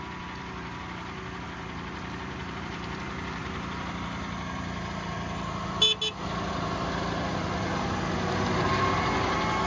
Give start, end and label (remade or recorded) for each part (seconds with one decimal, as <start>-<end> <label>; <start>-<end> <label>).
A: 0.0-9.7 recorded